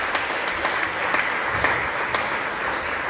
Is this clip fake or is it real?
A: real